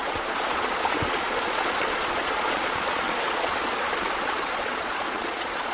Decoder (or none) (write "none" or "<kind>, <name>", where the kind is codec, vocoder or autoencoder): vocoder, Vocos